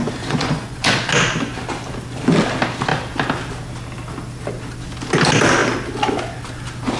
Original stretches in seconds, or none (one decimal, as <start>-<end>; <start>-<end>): 1.1-7.0